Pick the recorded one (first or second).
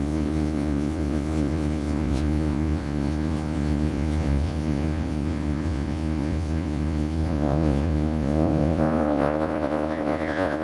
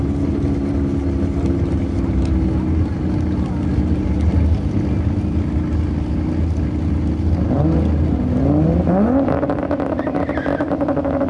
second